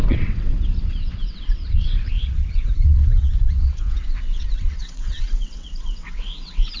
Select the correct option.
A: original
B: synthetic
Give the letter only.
B